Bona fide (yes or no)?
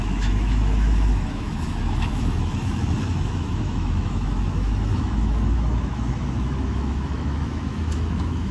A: no